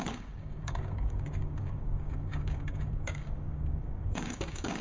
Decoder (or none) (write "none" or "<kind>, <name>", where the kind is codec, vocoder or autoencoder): codec, DAC